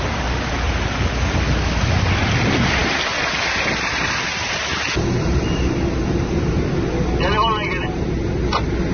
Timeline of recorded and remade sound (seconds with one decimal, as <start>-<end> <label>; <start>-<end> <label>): 0.0-8.9 recorded